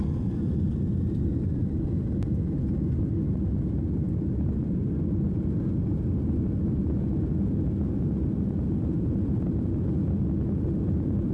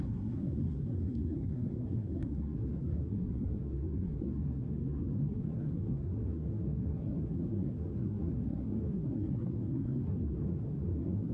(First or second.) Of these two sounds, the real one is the first